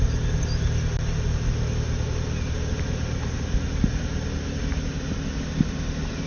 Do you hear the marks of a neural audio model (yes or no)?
no